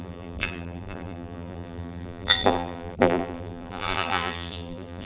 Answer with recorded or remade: remade